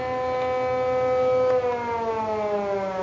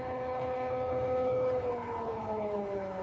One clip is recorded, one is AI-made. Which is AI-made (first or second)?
second